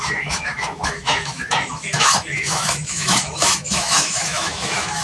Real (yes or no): no